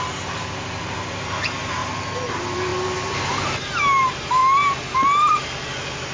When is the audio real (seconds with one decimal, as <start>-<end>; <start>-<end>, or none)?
4.4-5.5